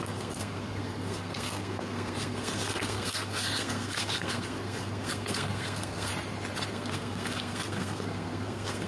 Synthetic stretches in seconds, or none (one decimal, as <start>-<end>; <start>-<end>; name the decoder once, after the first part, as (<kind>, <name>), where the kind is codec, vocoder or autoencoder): 0.0-6.1 (codec, SNAC); 6.7-8.9